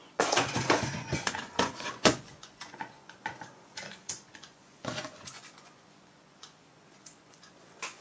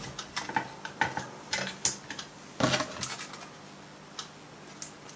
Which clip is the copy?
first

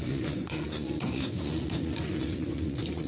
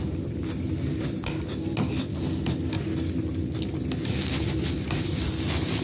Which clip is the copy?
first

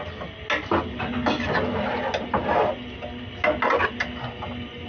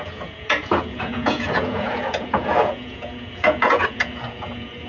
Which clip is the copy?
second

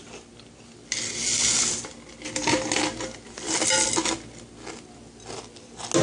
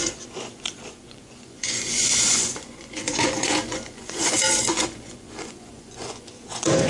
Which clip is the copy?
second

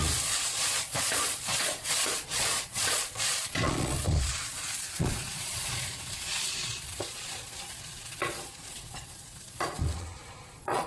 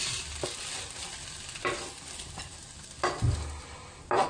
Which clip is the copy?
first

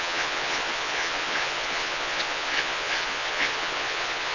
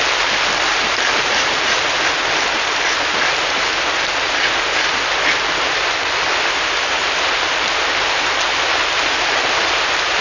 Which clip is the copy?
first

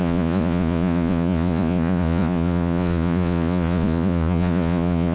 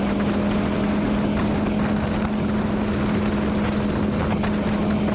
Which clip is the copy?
first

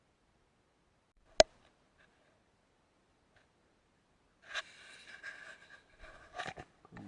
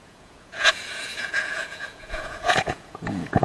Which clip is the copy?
second